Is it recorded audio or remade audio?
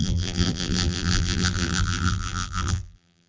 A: remade